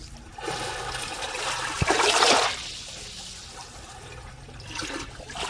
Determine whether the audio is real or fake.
real